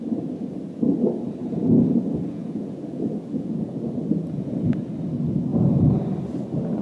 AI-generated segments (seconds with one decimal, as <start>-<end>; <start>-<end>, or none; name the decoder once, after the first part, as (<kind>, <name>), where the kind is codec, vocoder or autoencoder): 1.4-4.7 (vocoder, Vocos); 5.5-6.0